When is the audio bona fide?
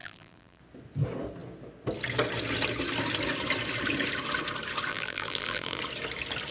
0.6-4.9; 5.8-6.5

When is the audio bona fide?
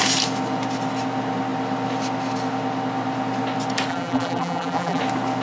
0.0-3.9; 5.0-5.4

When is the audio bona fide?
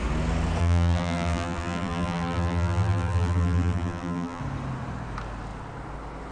0.0-0.6; 4.4-6.3